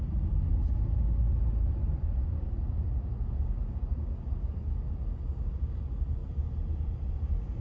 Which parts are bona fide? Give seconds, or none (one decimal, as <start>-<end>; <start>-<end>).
0.5-4.9; 6.2-7.1